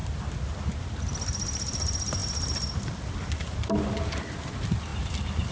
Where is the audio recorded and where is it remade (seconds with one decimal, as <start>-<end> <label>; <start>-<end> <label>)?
0.0-5.5 recorded